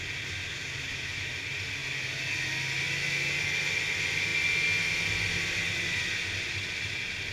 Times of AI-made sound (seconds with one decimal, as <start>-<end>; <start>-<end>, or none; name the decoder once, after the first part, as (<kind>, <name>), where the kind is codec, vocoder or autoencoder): 0.5-1.3 (autoencoder, DAC-VAE)

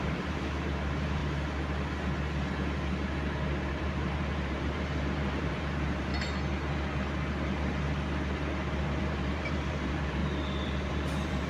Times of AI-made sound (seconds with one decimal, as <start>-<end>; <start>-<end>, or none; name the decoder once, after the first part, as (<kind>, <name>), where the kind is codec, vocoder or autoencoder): 0.0-1.2 (vocoder, BigVGAN v2); 3.7-6.1; 9.0-10.2; 10.9-11.5

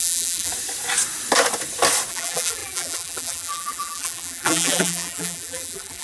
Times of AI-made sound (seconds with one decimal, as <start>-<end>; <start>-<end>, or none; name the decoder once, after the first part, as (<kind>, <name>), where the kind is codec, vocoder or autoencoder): 0.0-0.5 (vocoder, BigVGAN v2); 2.1-6.0